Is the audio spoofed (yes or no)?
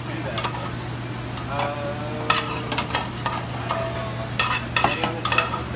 no